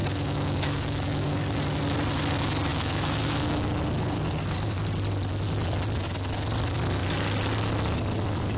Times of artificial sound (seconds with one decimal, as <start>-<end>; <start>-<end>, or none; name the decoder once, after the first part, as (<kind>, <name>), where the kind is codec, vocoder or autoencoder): 0.0-1.4 (autoencoder, DAC-VAE); 2.7-3.8

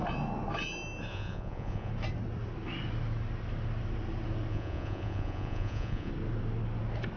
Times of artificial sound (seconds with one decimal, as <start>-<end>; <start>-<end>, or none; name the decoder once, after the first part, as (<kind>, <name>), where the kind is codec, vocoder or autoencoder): 1.1-1.9 (vocoder, Vocos); 4.5-6.1

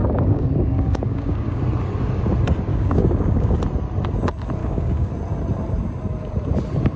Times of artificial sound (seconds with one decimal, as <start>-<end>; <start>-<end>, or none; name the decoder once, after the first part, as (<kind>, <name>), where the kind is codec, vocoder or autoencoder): 0.0-1.6 (codec, DAC); 2.7-3.6; 4.6-5.1

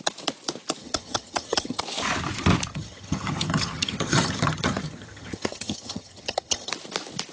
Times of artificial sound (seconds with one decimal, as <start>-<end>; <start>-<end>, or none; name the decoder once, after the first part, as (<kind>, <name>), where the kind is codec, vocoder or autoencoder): 0.8-1.8 (vocoder, HiFi-GAN); 2.7-6.7

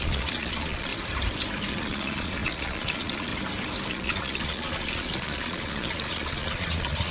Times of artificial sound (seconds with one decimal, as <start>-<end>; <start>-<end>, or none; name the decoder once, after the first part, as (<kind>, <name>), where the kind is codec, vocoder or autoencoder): 0.0-0.9 (vocoder, Vocos); 1.7-3.3; 3.9-7.1

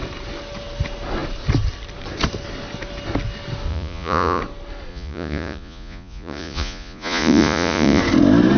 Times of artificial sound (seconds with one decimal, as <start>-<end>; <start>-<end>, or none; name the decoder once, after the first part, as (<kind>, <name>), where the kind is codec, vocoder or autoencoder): 3.7-4.4 (vocoder, Vocos); 4.9-8.0

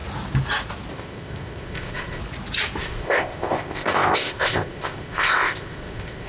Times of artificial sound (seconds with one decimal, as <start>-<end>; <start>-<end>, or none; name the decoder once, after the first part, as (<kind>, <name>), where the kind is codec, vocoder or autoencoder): 0.9-2.2 (codec, ZipCodec); 2.8-6.3